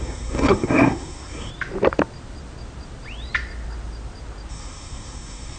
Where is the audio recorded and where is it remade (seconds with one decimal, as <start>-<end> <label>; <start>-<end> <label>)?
0.0-1.5 remade; 1.5-4.5 recorded; 4.5-5.6 remade